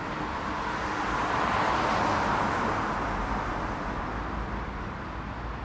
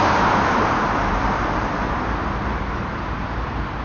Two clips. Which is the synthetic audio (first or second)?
second